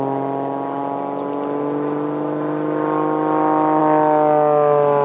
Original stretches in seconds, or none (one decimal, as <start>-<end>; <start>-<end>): 0.0-5.0